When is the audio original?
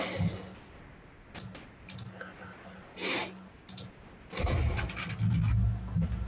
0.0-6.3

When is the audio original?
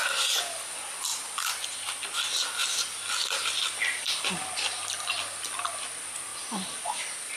0.0-2.6; 4.3-6.3; 6.8-7.4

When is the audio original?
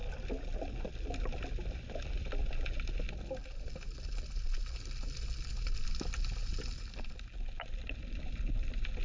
4.8-6.4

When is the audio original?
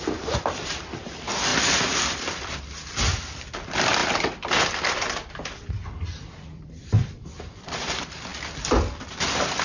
1.5-2.3; 8.3-8.9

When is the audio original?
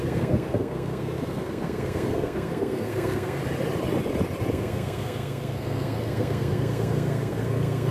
3.4-4.5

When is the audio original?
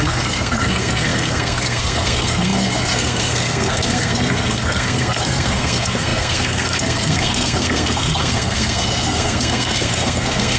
none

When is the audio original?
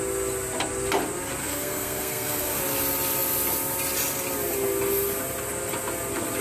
0.0-1.4; 2.6-6.4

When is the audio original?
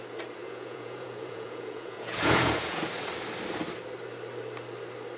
0.0-0.4; 2.9-5.2